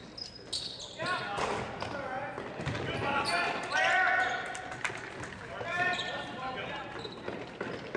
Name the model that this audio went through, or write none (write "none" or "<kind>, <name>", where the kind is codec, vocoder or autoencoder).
none